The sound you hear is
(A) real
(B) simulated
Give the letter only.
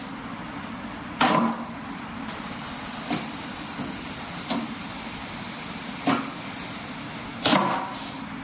A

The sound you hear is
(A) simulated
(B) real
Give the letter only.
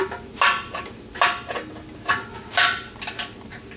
B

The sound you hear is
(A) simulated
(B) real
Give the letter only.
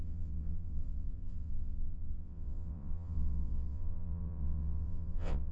A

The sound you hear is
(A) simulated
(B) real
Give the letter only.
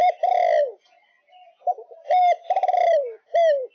B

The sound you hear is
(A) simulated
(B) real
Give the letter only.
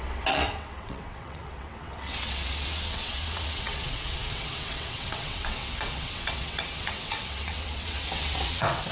A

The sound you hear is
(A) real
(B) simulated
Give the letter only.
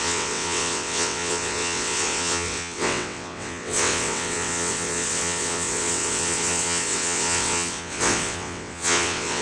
B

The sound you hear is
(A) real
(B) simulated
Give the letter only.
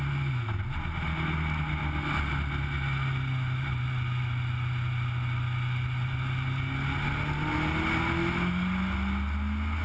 A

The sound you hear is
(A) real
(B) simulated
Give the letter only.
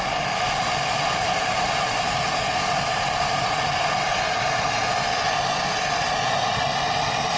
A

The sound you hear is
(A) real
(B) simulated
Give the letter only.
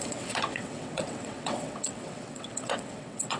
B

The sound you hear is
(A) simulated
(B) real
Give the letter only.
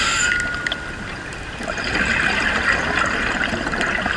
B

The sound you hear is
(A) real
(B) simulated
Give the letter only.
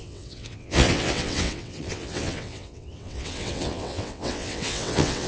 B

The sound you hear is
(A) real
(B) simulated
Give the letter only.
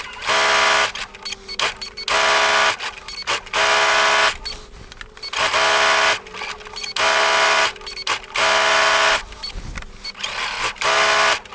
A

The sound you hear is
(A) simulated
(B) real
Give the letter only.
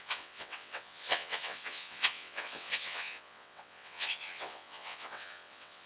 A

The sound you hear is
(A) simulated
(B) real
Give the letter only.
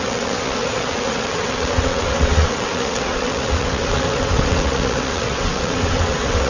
A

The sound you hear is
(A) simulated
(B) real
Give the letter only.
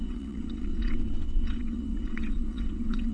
A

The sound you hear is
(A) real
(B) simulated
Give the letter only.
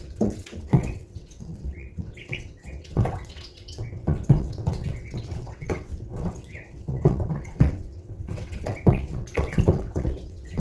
B